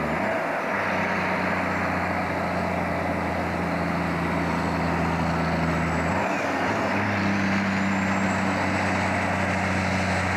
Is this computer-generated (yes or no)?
no